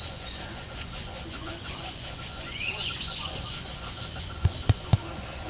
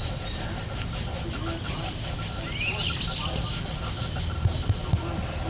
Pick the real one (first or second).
second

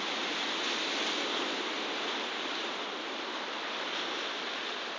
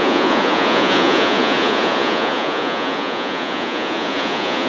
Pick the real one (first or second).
first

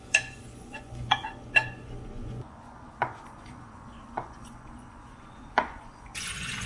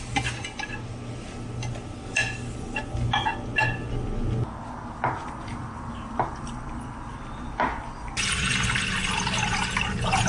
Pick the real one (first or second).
second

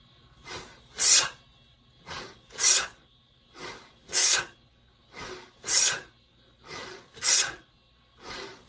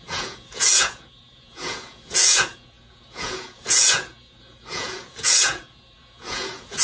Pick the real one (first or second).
first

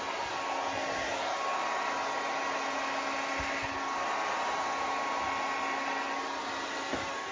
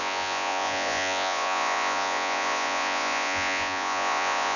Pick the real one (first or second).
first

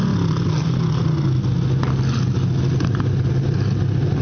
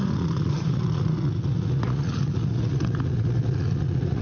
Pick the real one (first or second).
first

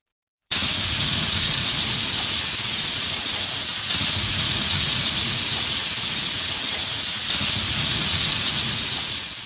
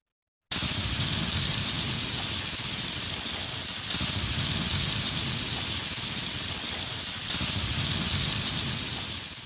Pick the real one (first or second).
second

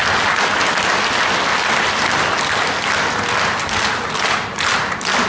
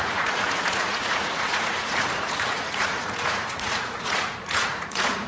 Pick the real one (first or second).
first